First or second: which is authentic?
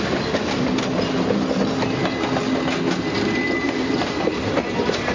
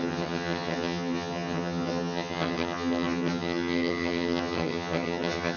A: first